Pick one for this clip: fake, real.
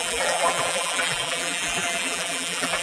fake